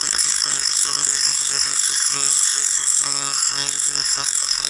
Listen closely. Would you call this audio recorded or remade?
remade